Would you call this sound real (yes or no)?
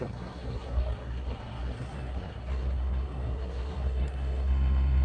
no